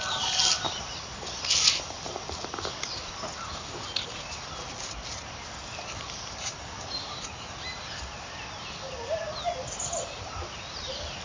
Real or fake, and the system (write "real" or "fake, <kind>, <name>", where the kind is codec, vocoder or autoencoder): real